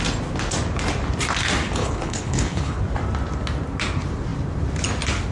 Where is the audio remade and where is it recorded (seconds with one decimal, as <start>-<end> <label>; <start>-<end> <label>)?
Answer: 0.0-1.8 recorded; 1.8-2.8 remade; 2.8-5.3 recorded